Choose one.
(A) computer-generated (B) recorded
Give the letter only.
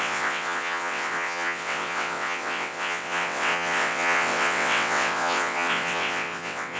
A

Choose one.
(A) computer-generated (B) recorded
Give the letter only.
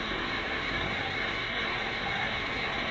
A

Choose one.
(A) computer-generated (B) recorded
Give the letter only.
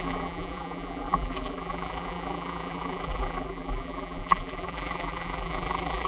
A